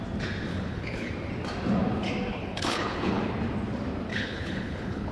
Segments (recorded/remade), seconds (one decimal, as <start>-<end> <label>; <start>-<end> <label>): 0.0-0.5 recorded; 0.5-1.1 remade; 1.1-2.3 recorded; 2.3-3.2 remade; 3.2-4.1 recorded; 4.1-5.1 remade